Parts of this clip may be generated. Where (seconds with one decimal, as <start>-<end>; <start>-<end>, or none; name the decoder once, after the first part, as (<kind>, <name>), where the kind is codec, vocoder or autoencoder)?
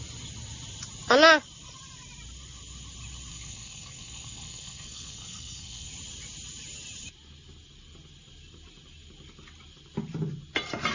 3.3-5.9 (codec, SNAC)